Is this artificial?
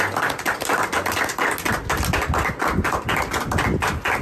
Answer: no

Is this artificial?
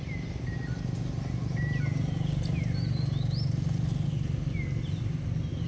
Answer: no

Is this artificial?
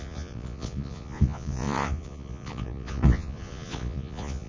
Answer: yes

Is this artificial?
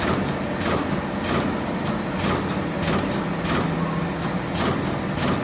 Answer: no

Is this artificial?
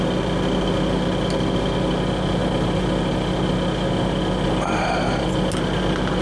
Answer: no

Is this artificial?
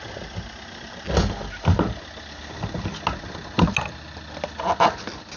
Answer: no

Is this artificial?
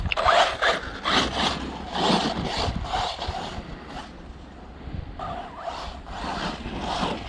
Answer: no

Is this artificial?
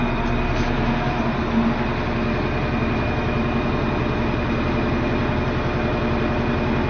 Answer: no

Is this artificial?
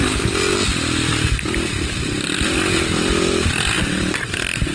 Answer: no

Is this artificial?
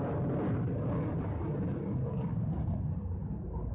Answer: no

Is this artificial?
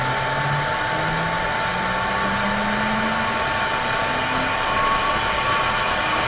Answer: no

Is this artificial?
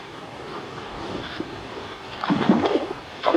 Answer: yes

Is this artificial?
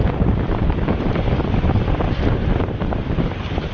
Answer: yes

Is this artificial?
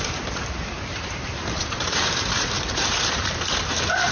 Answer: yes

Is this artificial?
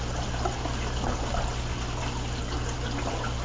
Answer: no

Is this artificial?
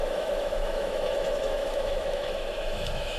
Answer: yes